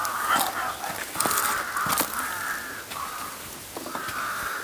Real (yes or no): yes